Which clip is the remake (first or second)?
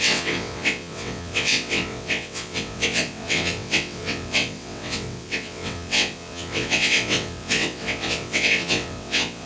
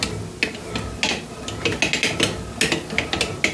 first